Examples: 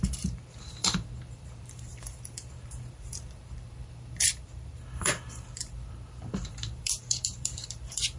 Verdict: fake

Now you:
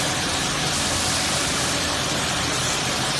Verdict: real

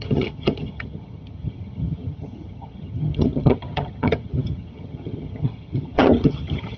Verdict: fake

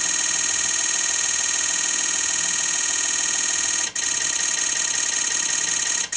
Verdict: real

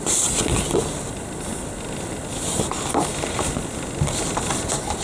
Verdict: real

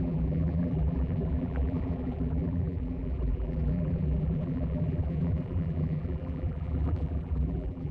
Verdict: fake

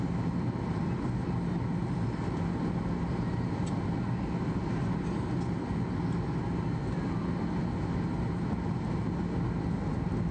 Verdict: real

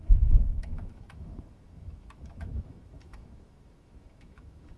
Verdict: fake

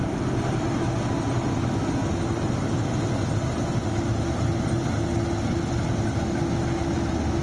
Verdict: real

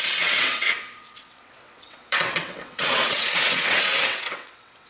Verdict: fake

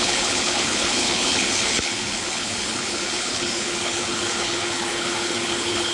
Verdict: fake